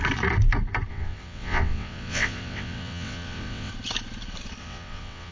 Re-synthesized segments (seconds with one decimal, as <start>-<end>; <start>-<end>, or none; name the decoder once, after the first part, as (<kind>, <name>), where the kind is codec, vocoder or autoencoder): 0.9-3.7 (vocoder, WaveNeXt); 4.6-5.3